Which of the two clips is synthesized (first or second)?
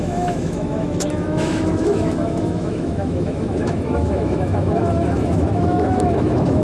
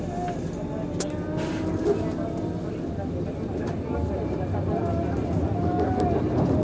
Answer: first